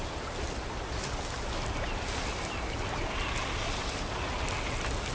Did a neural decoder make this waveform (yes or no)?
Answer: no